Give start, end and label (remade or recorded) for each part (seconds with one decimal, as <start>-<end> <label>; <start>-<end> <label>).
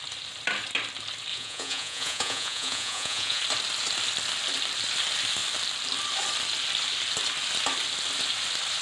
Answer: 0.0-1.3 recorded; 1.3-3.4 remade; 3.4-8.8 recorded